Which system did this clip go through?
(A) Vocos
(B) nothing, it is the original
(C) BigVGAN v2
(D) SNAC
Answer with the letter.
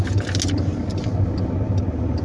B